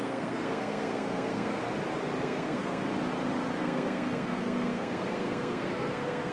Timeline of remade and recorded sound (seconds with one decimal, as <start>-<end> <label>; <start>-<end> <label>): 0.0-1.6 remade; 1.6-2.2 recorded; 2.2-2.9 remade; 2.9-3.6 recorded; 3.6-6.3 remade